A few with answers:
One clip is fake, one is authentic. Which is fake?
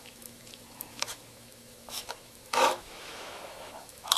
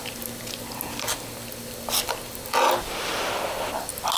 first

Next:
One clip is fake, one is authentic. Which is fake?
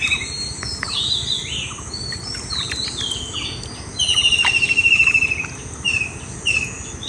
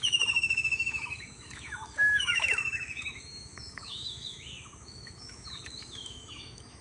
second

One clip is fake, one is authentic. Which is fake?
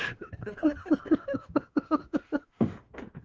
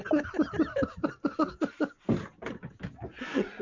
first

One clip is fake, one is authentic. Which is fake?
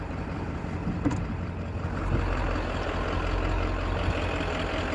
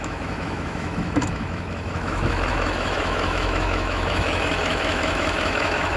second